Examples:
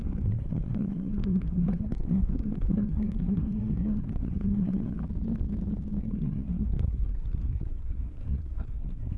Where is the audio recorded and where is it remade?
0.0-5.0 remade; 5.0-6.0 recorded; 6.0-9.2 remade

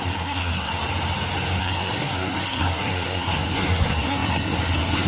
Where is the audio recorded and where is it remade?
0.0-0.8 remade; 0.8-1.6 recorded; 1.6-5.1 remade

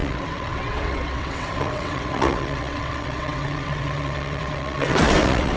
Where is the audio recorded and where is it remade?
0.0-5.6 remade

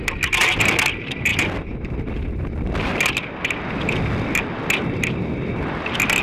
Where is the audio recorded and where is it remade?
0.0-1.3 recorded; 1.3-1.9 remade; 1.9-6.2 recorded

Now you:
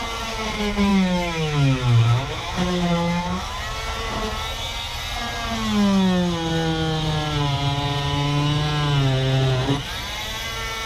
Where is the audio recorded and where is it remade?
0.0-0.9 recorded; 0.9-3.6 remade; 3.6-10.9 recorded

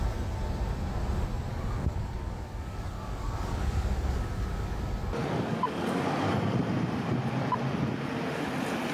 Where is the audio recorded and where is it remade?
0.0-1.5 recorded; 1.5-4.8 remade; 4.8-5.2 recorded; 5.2-6.3 remade; 6.3-8.9 recorded

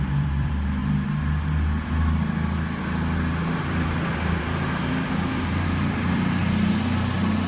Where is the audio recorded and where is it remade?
0.0-0.8 remade; 0.8-3.6 recorded; 3.6-6.4 remade; 6.4-7.5 recorded